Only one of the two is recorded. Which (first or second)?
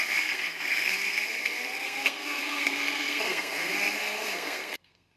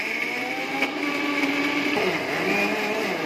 second